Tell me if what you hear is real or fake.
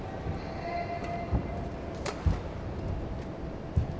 real